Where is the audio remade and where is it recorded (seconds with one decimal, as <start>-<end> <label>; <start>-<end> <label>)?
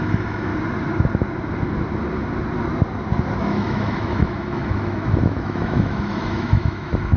0.0-0.5 remade; 0.5-3.4 recorded; 3.4-7.2 remade